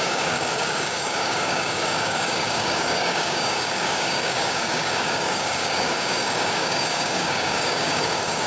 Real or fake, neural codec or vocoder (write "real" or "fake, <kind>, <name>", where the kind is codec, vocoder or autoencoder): fake, codec, DAC